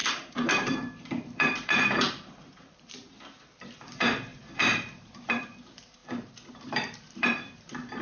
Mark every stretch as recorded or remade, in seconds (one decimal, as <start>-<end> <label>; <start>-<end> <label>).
0.0-6.0 remade; 6.0-6.5 recorded; 6.5-8.0 remade

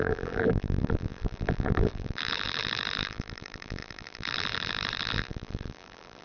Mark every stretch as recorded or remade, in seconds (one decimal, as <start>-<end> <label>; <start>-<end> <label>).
0.0-6.2 remade

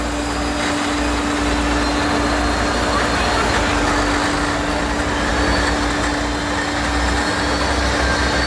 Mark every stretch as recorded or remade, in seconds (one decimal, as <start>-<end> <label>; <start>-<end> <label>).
0.0-8.5 recorded